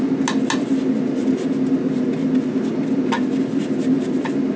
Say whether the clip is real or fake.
real